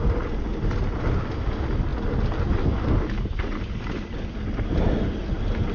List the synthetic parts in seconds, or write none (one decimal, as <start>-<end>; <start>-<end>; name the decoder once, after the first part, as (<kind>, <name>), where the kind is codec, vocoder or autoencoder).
none